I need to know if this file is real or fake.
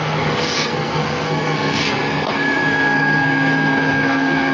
fake